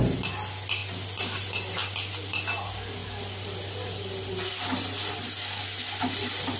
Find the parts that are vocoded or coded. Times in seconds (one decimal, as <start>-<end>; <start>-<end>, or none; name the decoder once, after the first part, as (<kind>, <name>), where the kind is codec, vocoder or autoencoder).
none